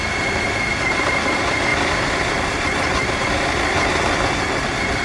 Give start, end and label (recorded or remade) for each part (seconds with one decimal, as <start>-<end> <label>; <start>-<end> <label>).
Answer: 0.0-5.0 recorded